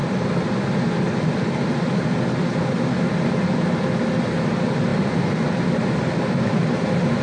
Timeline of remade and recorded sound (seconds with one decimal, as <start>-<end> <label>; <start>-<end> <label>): 0.0-7.2 recorded